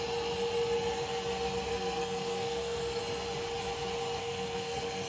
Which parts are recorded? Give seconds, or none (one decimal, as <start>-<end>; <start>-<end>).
0.0-1.7; 3.0-4.2